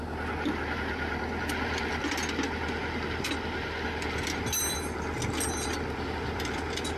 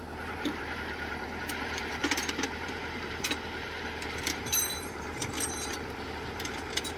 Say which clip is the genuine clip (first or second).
first